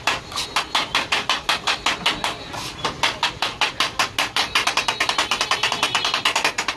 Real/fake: real